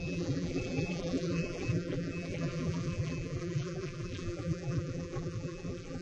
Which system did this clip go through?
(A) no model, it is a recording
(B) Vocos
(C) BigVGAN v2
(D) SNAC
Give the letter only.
C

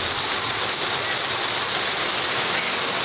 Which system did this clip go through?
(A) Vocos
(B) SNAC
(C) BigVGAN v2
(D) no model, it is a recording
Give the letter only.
D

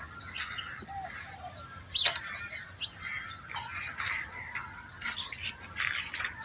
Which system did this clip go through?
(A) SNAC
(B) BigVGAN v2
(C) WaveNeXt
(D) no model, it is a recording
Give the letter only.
D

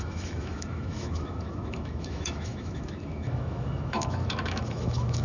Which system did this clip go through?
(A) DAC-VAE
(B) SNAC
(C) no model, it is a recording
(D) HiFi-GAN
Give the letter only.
A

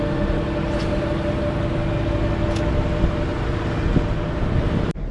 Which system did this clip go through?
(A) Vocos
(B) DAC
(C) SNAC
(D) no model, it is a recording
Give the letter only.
D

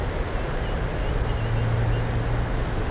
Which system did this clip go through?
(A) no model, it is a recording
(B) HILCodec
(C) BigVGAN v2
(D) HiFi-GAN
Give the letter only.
A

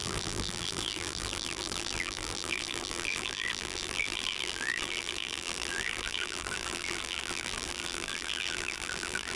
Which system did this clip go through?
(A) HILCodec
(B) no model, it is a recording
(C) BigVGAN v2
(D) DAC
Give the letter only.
C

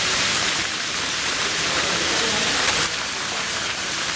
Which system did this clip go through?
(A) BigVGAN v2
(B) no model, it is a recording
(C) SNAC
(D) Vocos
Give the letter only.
A